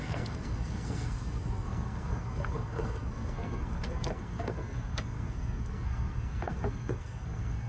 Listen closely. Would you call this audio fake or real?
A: fake